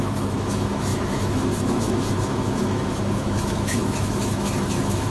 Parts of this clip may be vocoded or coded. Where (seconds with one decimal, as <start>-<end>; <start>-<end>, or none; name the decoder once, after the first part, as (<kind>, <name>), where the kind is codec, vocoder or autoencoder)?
0.0-5.1 (autoencoder, DAC-VAE)